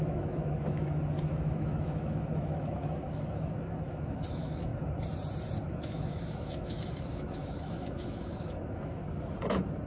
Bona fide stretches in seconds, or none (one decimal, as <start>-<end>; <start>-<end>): 4.7-5.7; 9.0-9.9